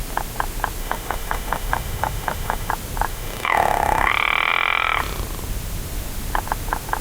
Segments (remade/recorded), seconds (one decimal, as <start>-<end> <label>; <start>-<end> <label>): 0.0-0.8 recorded; 0.8-2.7 remade; 2.7-3.1 recorded; 3.1-4.1 remade; 4.1-7.0 recorded